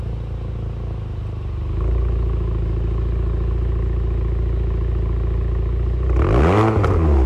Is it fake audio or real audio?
real